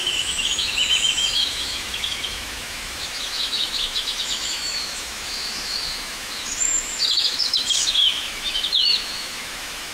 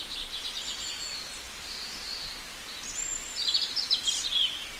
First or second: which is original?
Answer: second